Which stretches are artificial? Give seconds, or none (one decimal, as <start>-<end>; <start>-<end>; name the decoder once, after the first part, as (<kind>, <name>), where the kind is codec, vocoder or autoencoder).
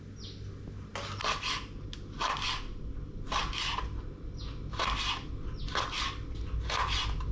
none